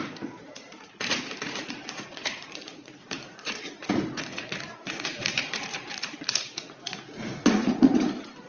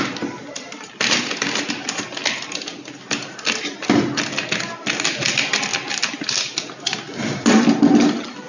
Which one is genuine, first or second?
second